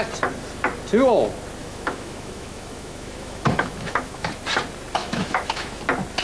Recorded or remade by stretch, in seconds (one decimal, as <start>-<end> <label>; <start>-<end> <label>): 0.0-1.6 recorded; 1.6-4.3 remade; 4.3-5.0 recorded; 5.0-5.8 remade; 5.8-6.2 recorded